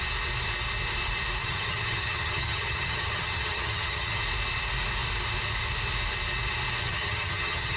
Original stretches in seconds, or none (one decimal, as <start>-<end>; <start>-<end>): 0.0-1.4; 4.2-6.8